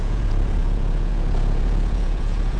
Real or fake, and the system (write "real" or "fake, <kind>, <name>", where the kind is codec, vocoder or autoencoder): fake, vocoder, Vocos